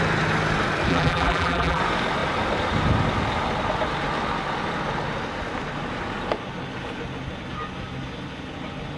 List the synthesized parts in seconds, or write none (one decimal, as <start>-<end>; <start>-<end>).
0.9-1.8